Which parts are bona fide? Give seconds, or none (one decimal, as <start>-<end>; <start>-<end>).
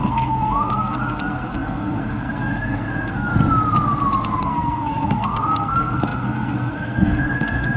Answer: 3.3-4.4